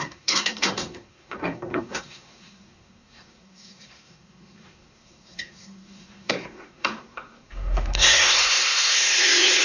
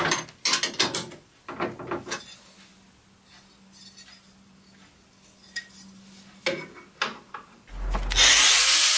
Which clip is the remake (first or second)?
first